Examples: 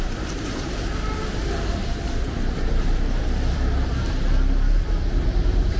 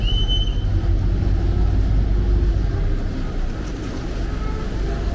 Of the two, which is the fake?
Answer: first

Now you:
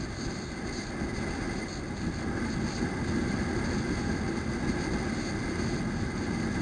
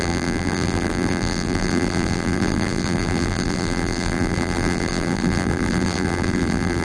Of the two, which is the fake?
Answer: second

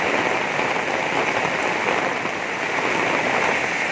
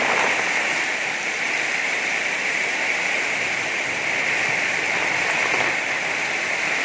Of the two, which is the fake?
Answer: second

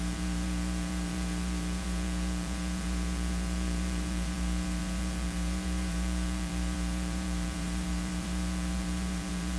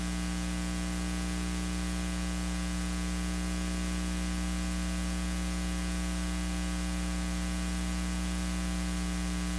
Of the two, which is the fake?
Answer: first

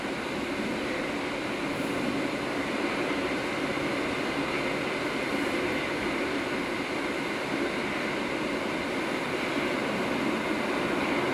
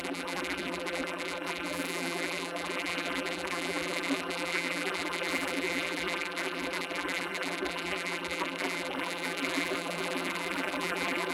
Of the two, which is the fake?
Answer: second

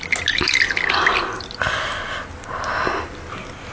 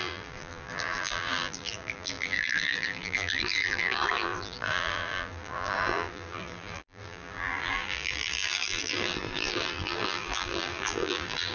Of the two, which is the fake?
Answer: second